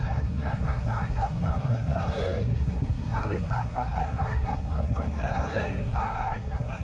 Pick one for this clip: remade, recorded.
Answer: remade